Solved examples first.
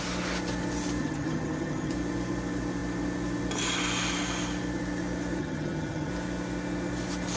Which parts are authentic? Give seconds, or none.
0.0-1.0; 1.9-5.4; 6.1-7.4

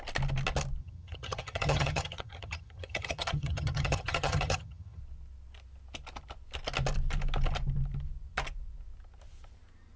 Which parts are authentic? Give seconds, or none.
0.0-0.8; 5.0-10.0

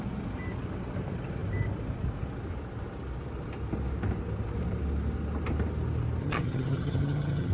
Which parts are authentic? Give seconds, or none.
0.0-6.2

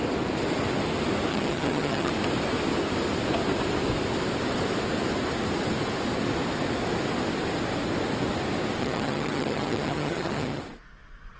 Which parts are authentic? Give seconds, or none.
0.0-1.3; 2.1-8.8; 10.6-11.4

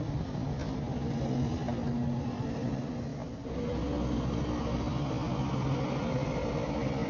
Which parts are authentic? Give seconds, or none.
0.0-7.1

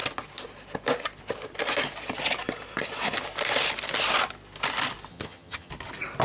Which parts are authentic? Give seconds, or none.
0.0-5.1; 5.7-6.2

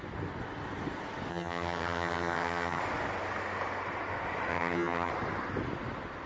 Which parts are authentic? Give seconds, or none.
0.0-1.3; 2.8-4.5; 5.1-6.3